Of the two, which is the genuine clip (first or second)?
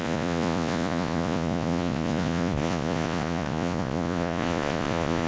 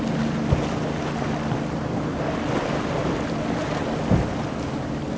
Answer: second